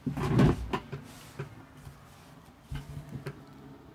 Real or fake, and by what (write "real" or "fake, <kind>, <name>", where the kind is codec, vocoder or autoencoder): real